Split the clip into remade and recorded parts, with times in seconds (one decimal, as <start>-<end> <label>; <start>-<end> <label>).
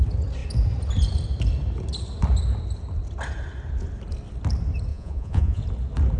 0.0-4.9 recorded; 4.9-5.6 remade; 5.6-6.2 recorded